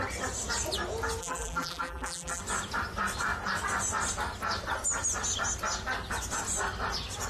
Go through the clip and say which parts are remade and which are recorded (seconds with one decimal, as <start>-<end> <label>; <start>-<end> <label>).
0.0-1.2 recorded; 1.2-2.4 remade; 2.4-7.3 recorded